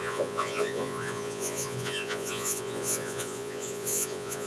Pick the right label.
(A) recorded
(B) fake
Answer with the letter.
B